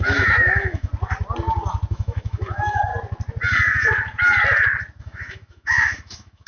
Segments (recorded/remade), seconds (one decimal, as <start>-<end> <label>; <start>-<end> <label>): 0.0-0.9 remade; 0.9-1.9 recorded; 1.9-2.9 remade; 2.9-5.0 recorded; 5.0-6.5 remade